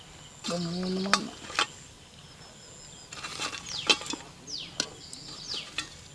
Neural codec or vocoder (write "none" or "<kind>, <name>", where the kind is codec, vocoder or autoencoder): none